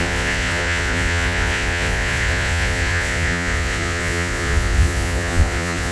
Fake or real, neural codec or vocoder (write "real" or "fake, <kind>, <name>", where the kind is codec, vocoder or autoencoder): fake, vocoder, Vocos